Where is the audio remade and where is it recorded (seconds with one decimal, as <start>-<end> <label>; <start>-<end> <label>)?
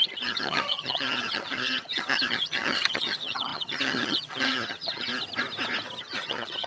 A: 0.0-5.1 remade; 5.1-6.0 recorded; 6.0-6.7 remade